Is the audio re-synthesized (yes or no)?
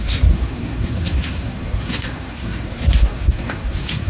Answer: yes